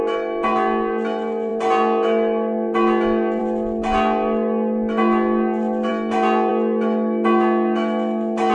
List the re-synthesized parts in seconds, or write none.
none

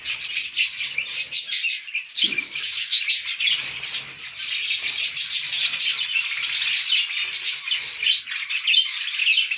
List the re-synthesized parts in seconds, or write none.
2.1-3.0

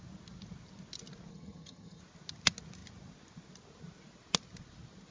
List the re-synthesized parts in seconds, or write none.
1.3-2.0

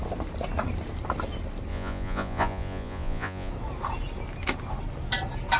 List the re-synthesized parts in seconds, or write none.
1.7-3.5

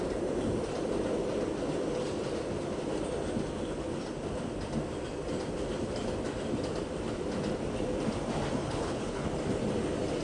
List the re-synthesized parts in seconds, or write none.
8.6-9.3

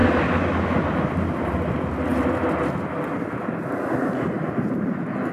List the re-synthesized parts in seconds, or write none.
none

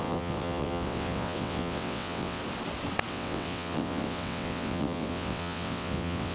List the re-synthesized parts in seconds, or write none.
0.0-2.4; 3.1-6.3

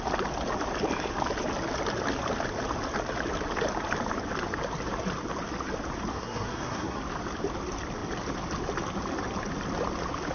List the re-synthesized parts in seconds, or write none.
6.1-7.0